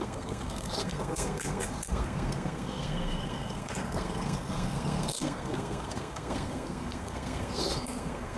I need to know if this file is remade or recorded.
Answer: remade